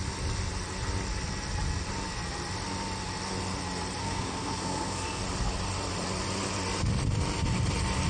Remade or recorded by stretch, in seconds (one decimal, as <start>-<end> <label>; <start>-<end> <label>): 0.0-4.0 recorded; 4.0-5.2 remade; 5.2-8.1 recorded